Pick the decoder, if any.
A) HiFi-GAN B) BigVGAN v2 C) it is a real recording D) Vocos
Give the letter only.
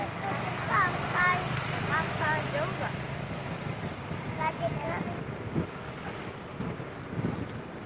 C